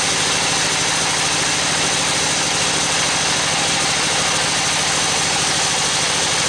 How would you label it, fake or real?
real